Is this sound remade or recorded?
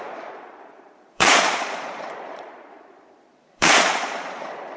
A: remade